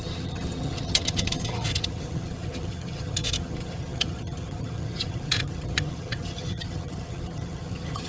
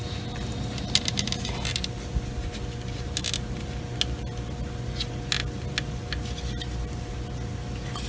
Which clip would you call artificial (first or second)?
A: first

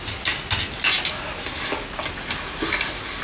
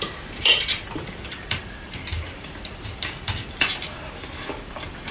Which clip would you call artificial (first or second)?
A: second